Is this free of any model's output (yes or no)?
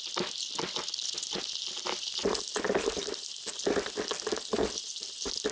yes